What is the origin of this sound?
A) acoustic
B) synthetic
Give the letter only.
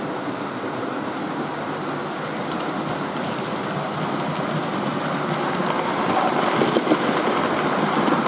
A